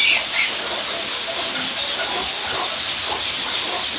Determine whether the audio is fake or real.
real